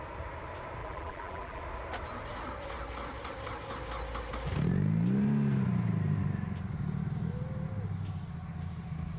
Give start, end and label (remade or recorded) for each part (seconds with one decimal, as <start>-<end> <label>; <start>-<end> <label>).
0.0-0.8 recorded; 0.8-1.6 remade; 1.6-9.2 recorded